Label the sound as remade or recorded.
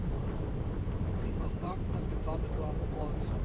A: remade